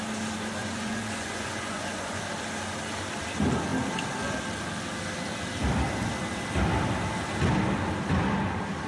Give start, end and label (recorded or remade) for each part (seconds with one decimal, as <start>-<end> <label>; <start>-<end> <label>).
0.0-0.6 recorded; 0.6-2.2 remade; 2.2-8.9 recorded